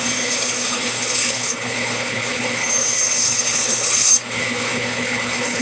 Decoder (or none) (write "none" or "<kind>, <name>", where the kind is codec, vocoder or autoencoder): codec, HILCodec